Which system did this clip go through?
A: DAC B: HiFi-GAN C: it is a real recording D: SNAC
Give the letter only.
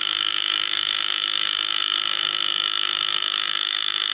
A